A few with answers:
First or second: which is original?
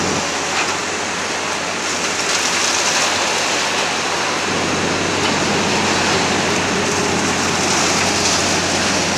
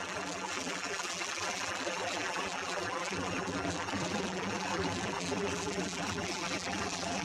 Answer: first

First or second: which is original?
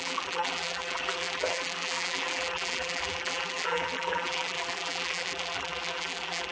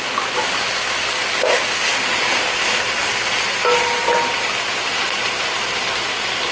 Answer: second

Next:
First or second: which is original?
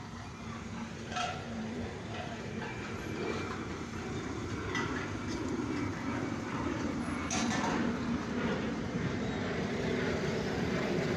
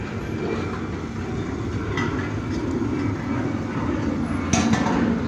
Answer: second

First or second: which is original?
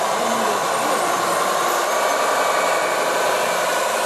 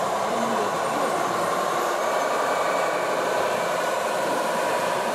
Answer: first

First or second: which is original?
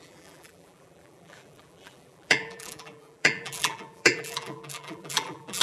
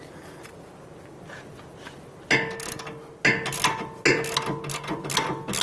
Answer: second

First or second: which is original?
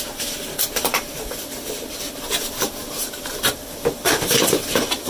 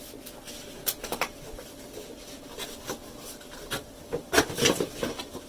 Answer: second